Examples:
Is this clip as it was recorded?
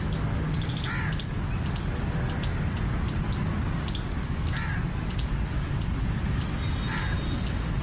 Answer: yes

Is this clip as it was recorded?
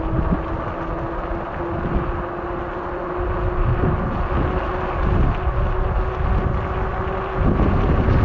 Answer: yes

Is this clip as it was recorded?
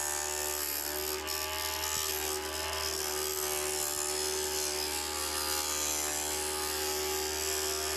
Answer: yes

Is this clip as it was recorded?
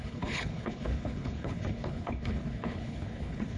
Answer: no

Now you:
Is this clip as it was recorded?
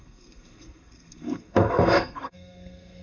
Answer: no